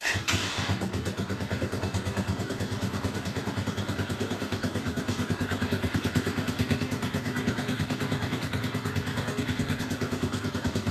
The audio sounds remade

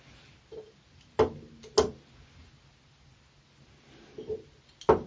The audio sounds recorded